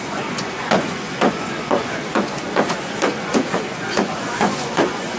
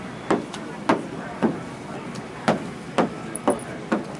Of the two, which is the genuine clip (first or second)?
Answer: second